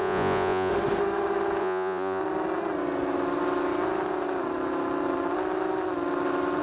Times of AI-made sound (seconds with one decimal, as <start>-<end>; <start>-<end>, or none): 0.0-0.7; 1.6-2.2